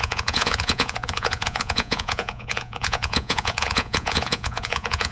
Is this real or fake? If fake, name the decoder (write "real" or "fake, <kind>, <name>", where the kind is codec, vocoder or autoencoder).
fake, vocoder, Vocos